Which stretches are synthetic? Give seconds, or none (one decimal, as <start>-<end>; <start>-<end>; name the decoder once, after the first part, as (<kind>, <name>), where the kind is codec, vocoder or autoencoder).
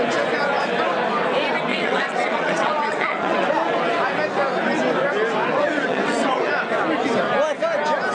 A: 1.7-3.5 (vocoder, WaveNeXt); 5.5-6.5